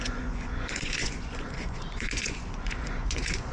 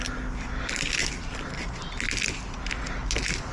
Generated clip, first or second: first